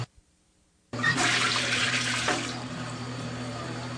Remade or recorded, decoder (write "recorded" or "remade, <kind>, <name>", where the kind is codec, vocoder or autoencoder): remade, vocoder, BigVGAN v2